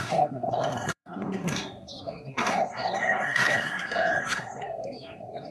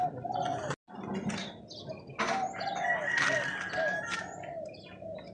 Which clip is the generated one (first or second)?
first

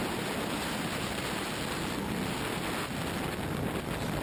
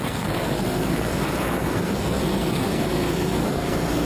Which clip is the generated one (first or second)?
second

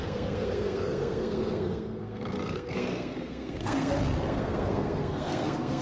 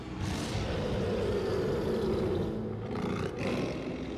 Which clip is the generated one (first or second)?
first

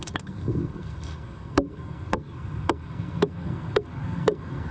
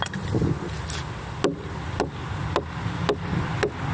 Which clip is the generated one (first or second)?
first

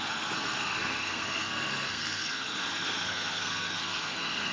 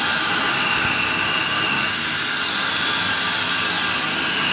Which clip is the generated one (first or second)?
first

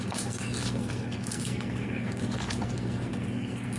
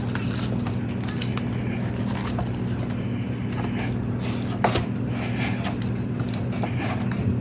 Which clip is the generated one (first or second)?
first